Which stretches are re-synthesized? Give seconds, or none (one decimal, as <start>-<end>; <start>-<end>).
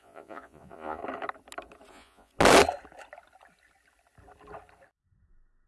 0.0-1.0; 1.9-2.3